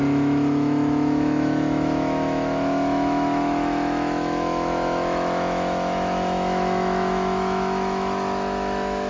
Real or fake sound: fake